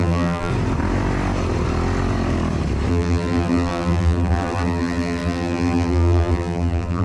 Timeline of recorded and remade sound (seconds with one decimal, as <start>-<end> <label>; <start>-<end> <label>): 0.0-0.5 remade; 0.5-2.9 recorded; 2.9-7.0 remade